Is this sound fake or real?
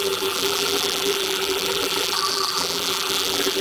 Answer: fake